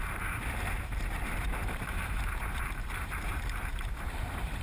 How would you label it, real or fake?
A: fake